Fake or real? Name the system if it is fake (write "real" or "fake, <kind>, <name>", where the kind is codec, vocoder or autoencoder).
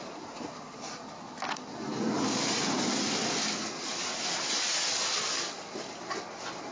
real